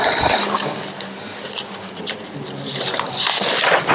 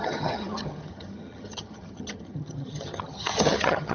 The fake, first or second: second